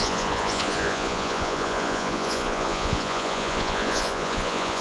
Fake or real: fake